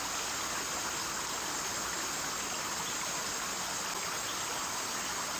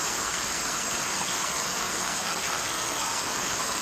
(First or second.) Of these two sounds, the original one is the first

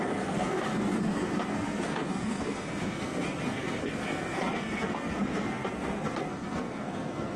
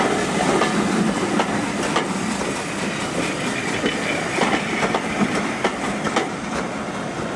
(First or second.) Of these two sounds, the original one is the second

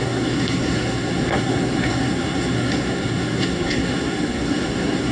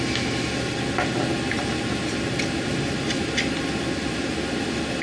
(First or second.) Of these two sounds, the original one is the second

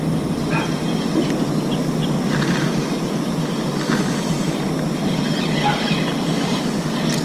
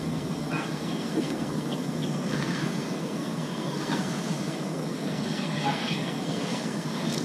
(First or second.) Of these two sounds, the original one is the first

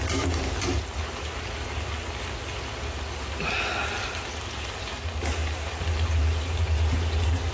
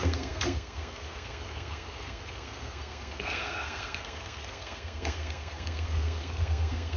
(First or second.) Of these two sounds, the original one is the first